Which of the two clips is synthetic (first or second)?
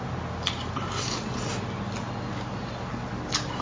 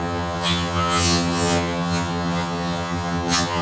second